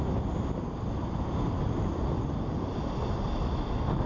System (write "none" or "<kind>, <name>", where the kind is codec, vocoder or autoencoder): none